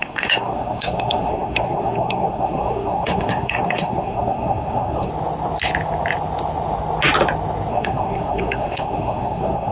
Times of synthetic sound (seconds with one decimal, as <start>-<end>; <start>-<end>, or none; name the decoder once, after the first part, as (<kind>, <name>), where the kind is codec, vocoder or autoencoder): 0.0-5.1 (codec, SNAC); 7.7-9.7